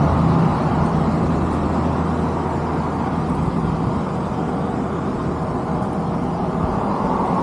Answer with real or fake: real